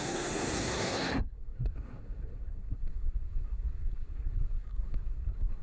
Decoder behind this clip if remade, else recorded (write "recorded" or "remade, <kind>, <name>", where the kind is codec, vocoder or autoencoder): remade, codec, SNAC